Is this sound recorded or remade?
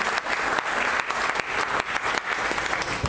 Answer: recorded